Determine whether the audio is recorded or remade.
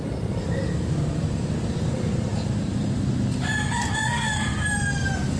recorded